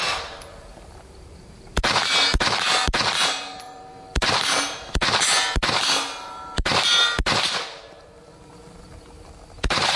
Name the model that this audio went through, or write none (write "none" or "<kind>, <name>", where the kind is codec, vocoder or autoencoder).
vocoder, BigVGAN v2